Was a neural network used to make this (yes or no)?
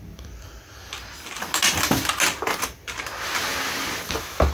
no